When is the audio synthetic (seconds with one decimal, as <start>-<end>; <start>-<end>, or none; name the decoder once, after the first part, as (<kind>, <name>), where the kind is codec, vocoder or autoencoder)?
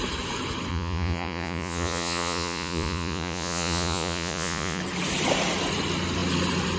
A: 0.7-4.8 (vocoder, Vocos)